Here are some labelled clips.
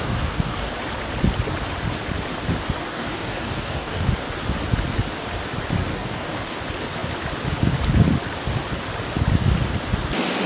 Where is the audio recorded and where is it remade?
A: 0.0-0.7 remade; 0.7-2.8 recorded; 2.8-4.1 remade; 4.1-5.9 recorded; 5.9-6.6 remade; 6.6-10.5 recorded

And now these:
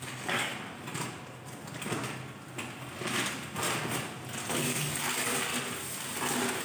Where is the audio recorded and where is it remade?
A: 0.0-0.5 remade; 0.5-4.5 recorded; 4.5-5.5 remade; 5.5-6.6 recorded

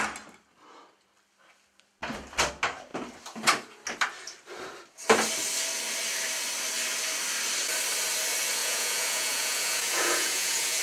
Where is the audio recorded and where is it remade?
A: 0.0-8.6 recorded; 8.6-10.8 remade

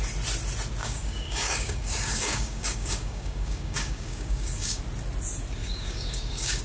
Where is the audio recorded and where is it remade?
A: 0.0-0.8 recorded; 0.8-4.8 remade; 4.8-5.6 recorded; 5.6-6.6 remade

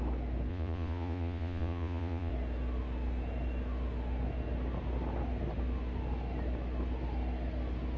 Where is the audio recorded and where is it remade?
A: 0.0-0.5 recorded; 0.5-2.3 remade; 2.3-8.0 recorded

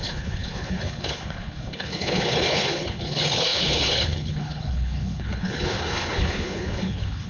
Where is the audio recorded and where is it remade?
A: 0.0-7.3 remade

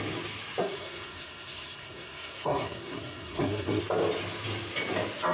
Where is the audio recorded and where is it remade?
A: 0.0-0.6 recorded; 0.6-3.8 remade; 3.8-5.3 recorded

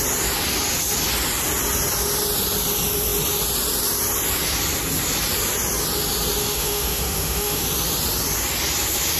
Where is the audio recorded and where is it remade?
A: 0.0-6.4 recorded; 6.4-7.6 remade; 7.6-9.2 recorded